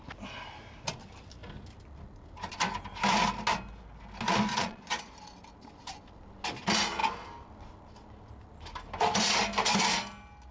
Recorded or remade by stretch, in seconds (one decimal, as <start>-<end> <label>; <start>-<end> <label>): 0.0-4.5 recorded; 4.5-5.0 remade; 5.0-10.5 recorded